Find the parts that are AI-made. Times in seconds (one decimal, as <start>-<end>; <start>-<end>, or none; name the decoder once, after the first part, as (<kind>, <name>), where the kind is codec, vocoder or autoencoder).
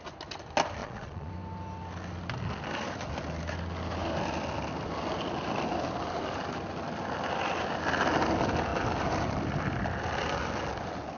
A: 0.8-1.3 (vocoder, Vocos)